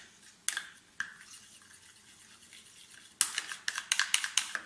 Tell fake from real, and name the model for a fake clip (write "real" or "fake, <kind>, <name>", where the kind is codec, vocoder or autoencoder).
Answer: real